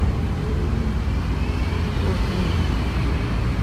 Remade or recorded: remade